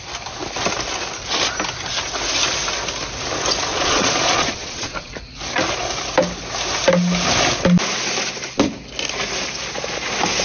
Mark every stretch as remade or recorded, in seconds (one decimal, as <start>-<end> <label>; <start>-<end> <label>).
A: 0.0-3.7 recorded; 3.7-5.1 remade; 5.1-10.4 recorded